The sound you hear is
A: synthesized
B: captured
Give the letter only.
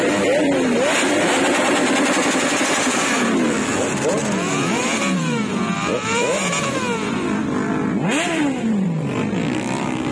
A